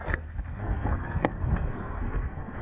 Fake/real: fake